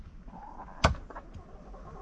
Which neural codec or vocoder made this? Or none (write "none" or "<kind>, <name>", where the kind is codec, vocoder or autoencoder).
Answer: none